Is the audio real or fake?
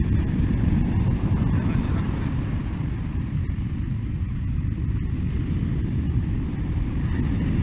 fake